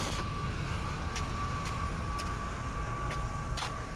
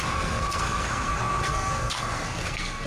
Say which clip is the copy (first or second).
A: second